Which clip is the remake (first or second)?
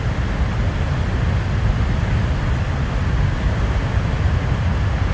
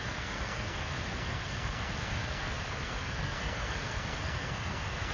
second